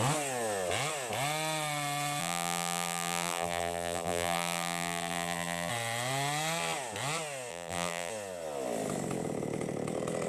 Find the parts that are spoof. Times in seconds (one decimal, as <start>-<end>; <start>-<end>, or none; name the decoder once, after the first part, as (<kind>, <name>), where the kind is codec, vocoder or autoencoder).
2.2-5.7 (vocoder, BigVGAN v2); 7.5-8.1